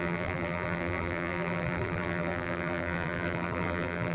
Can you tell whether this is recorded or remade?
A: remade